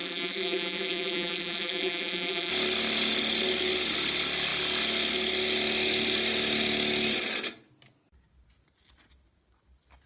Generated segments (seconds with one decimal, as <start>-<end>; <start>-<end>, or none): 0.0-2.5